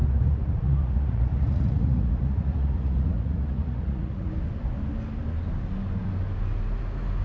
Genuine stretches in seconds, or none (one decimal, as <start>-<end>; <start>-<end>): 4.3-7.2